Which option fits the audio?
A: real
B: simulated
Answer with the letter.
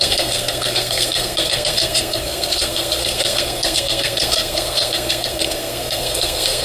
B